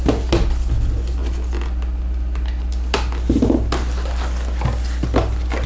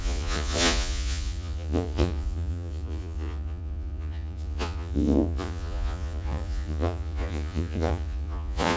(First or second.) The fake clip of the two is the second